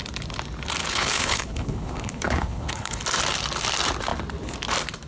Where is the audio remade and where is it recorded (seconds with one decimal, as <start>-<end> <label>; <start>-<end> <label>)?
0.0-0.8 recorded; 0.8-3.0 remade; 3.0-5.1 recorded